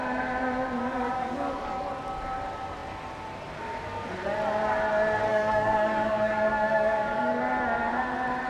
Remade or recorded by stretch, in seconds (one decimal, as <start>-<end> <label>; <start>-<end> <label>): 0.0-0.9 recorded; 0.9-1.9 remade; 1.9-5.3 recorded; 5.3-7.4 remade; 7.4-8.5 recorded